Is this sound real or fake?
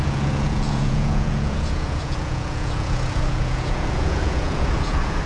fake